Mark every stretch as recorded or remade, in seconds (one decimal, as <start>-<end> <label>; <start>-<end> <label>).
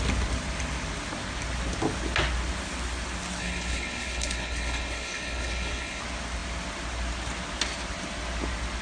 0.0-3.4 recorded; 3.4-6.0 remade; 6.0-8.8 recorded